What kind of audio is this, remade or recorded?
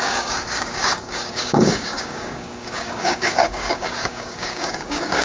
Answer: remade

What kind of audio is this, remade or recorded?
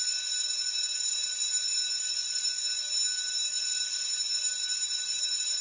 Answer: recorded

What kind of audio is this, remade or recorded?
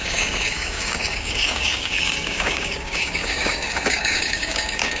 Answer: remade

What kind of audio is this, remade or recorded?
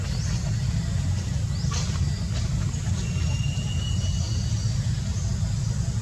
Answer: recorded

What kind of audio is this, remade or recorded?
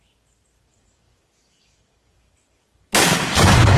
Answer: remade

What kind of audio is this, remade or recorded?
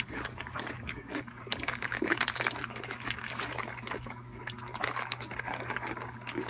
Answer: remade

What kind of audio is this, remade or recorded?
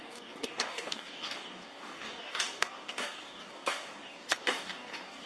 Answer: remade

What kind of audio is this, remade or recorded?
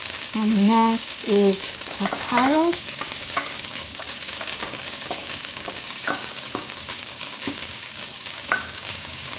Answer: remade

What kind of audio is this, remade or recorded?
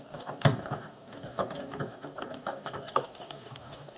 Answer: remade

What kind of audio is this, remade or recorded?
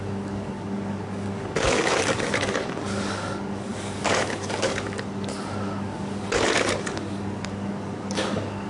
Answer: remade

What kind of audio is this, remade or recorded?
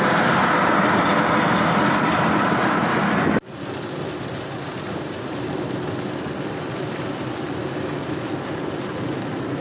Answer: recorded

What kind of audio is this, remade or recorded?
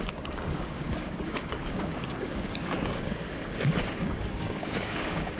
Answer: remade